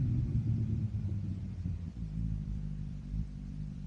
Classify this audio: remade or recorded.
remade